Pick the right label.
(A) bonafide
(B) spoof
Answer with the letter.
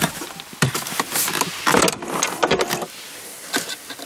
A